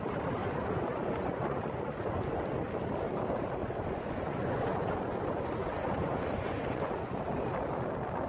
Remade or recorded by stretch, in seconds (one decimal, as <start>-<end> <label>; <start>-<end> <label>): 0.0-0.4 recorded; 0.4-2.4 remade; 2.4-3.6 recorded; 3.6-7.2 remade; 7.2-8.3 recorded